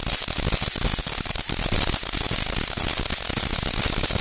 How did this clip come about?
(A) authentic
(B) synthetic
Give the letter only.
A